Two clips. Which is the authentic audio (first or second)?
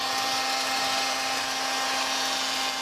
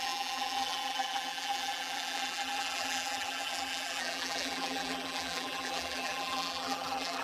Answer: first